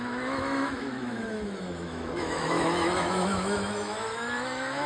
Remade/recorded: remade